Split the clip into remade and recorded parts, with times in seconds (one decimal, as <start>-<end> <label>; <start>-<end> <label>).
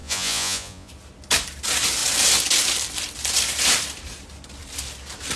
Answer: 0.0-0.9 remade; 0.9-5.4 recorded